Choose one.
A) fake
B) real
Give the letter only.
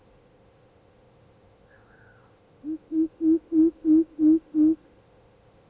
A